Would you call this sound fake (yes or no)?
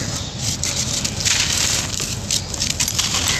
no